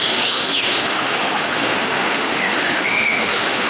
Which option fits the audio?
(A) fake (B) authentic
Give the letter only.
A